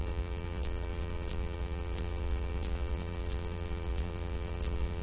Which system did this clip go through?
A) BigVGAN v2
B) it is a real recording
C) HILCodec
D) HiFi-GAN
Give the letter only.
A